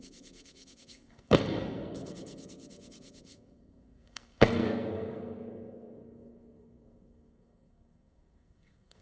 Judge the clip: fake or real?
fake